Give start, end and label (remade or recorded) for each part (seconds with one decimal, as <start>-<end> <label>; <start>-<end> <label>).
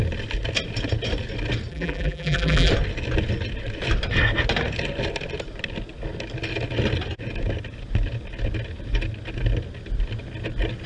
0.0-1.7 recorded; 1.7-2.7 remade; 2.7-10.9 recorded